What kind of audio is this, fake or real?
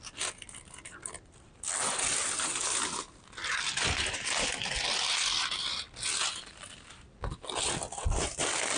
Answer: real